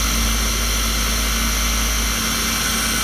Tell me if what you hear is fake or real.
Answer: real